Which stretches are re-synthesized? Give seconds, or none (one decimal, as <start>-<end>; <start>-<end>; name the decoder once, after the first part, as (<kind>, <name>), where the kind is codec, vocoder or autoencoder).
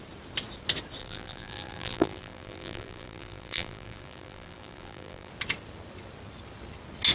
1.0-5.3 (vocoder, BigVGAN v2)